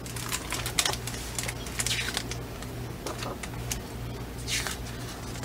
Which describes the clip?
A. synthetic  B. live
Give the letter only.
B